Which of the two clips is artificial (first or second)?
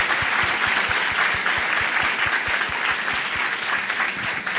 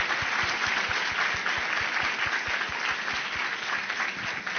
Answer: first